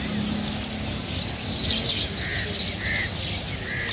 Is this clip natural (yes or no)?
yes